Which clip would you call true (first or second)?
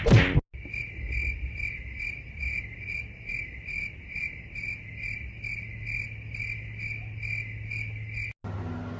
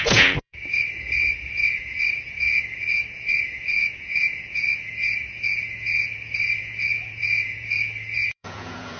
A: first